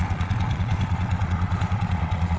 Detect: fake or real fake